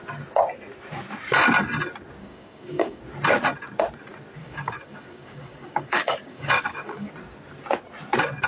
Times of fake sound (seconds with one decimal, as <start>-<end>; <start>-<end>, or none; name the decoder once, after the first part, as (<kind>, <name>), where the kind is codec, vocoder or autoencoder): 2.2-3.0 (codec, DAC); 4.4-7.1

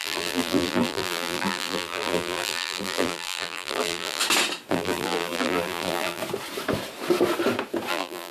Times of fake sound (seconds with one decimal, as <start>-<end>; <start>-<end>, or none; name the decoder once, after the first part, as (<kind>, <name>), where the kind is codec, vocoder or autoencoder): 0.0-4.2 (vocoder, BigVGAN v2); 4.7-6.2; 7.9-8.3